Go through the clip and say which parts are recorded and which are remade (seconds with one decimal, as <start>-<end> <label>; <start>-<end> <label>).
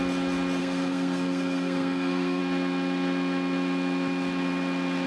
0.0-0.6 recorded; 0.6-2.4 remade; 2.4-5.1 recorded